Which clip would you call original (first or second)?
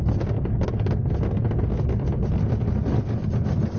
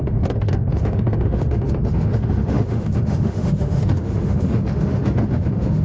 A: first